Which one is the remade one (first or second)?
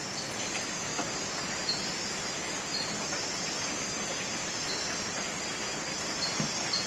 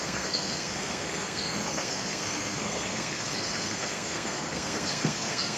second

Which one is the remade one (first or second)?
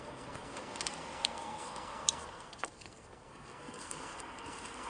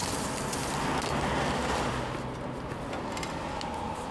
first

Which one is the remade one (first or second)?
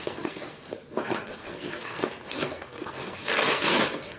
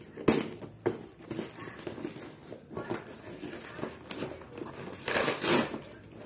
first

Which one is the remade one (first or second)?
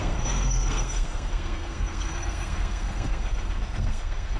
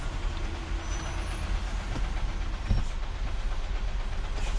first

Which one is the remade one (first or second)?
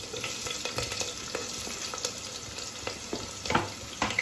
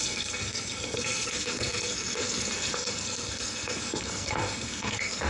second